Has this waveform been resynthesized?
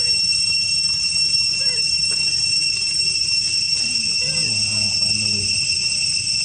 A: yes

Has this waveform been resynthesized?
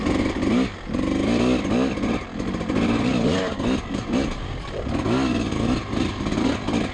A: no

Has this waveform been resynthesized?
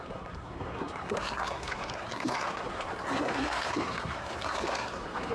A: yes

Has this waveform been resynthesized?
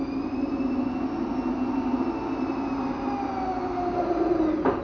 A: no